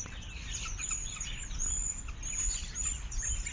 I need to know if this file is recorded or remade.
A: recorded